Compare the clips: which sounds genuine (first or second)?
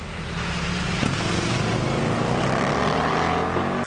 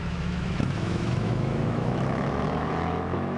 first